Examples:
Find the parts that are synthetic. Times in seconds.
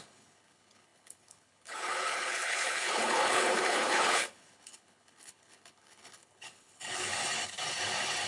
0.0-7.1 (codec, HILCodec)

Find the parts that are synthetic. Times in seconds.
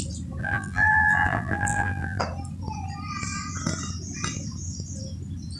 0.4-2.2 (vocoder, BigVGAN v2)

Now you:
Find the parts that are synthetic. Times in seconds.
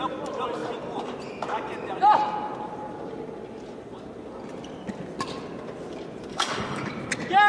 6.3-6.9 (codec, DAC)